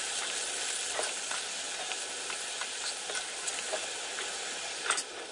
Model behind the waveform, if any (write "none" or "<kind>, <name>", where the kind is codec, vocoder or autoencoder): none